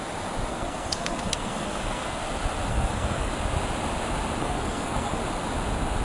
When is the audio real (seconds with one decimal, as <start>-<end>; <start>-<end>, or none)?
0.0-0.5; 2.2-2.7; 3.3-4.4; 5.2-6.0